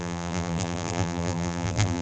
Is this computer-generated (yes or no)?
yes